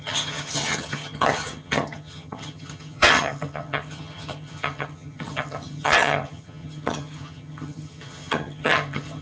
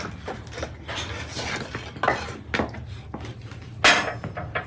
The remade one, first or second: first